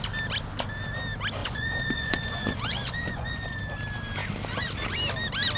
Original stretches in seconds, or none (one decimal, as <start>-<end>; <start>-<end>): 0.0-1.4; 3.6-5.6